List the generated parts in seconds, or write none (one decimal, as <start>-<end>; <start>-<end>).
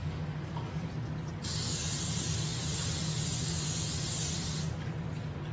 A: 0.0-0.9